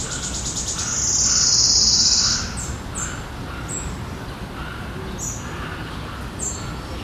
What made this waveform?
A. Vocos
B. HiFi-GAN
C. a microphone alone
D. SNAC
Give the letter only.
C